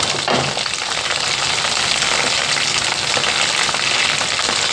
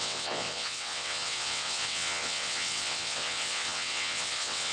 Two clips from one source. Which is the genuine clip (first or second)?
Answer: first